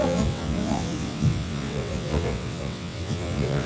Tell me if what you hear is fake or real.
fake